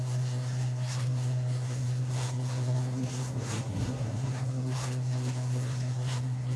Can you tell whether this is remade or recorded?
remade